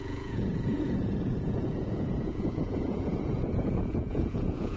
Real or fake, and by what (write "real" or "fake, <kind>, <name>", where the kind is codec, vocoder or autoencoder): fake, vocoder, Vocos